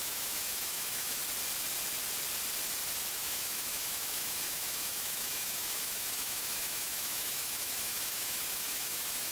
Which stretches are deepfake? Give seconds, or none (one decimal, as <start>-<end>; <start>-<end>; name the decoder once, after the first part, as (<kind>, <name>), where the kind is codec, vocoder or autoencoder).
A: 0.0-1.2 (autoencoder, DAC-VAE); 3.1-9.3